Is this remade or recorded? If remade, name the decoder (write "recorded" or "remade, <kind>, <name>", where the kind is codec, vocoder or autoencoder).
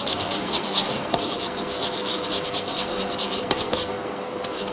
remade, codec, SNAC